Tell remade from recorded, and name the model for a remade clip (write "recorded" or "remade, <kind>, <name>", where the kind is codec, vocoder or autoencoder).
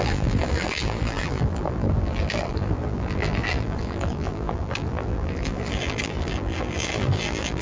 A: remade, vocoder, BigVGAN v2